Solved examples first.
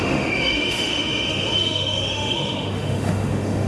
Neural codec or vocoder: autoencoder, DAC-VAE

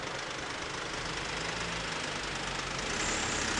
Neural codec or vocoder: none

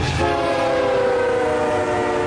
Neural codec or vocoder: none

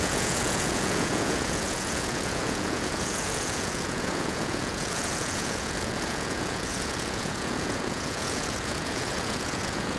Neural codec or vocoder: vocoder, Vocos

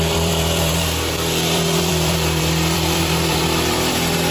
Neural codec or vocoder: vocoder, BigVGAN v2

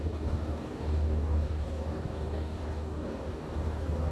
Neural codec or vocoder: codec, DAC